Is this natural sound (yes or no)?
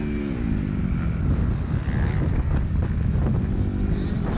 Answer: yes